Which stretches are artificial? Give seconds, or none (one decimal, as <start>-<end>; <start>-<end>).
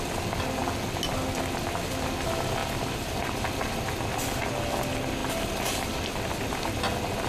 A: 2.6-3.4